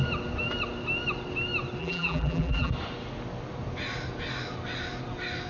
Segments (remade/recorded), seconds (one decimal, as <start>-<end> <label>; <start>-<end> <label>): 0.0-1.8 recorded; 1.8-2.7 remade; 2.7-5.5 recorded